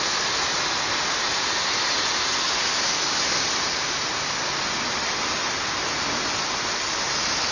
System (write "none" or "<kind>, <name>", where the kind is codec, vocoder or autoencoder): none